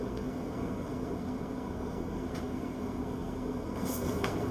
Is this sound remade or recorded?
remade